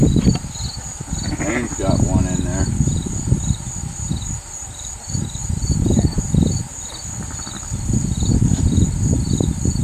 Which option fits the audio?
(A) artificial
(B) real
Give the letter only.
B